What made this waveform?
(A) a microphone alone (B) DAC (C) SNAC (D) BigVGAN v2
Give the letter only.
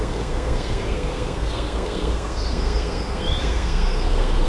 C